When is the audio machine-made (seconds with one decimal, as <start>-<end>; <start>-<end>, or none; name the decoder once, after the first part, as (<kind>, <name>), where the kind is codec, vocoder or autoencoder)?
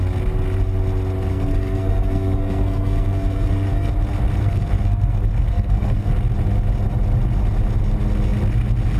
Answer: 1.3-3.9 (codec, SNAC); 4.4-6.1